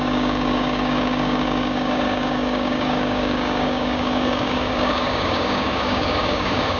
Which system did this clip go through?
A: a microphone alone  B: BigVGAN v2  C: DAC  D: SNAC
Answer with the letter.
C